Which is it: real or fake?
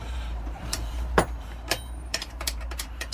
fake